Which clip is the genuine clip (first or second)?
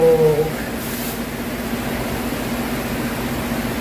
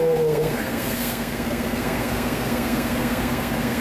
first